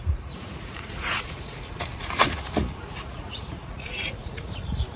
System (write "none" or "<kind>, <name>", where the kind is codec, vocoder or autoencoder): vocoder, Vocos